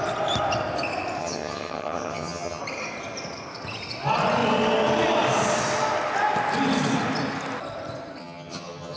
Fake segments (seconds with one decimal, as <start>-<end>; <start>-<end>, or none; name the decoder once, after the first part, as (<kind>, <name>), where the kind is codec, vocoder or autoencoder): 1.2-2.6 (vocoder, HiFi-GAN); 8.2-9.0

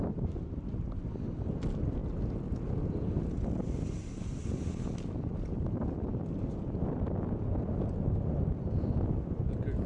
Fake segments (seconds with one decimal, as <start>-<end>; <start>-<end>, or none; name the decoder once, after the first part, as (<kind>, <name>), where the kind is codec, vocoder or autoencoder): none

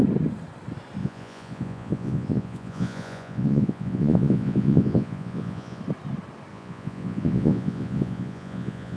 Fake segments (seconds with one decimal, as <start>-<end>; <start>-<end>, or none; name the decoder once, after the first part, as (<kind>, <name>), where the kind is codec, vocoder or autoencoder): 1.0-5.8 (vocoder, Vocos); 6.5-9.0

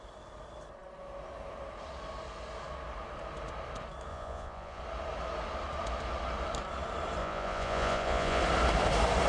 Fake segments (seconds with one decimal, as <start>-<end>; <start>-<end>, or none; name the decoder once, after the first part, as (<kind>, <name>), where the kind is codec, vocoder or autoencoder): 4.1-4.8 (vocoder, Vocos); 7.2-8.4

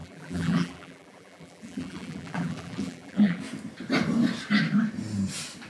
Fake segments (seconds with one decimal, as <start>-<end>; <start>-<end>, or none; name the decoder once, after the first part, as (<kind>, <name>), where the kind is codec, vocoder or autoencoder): 0.0-3.4 (vocoder, BigVGAN v2)

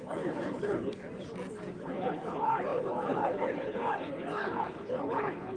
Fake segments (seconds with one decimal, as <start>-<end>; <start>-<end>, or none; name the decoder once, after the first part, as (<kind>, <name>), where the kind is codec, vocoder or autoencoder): 0.0-1.0 (codec, HILCodec); 1.8-5.6

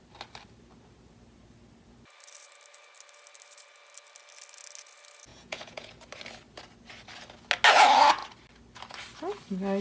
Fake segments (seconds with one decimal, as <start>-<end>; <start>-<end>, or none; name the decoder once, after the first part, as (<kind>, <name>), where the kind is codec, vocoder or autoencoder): 5.3-5.9 (vocoder, Vocos)

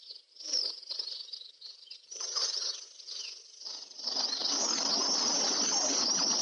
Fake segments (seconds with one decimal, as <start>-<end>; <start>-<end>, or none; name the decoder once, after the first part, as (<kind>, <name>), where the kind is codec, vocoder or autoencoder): none